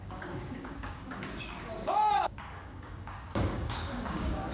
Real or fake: fake